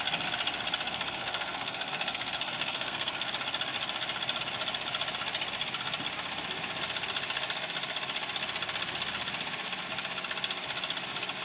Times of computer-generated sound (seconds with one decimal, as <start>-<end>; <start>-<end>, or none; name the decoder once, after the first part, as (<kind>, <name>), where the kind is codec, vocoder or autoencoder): 0.9-3.3 (codec, SNAC)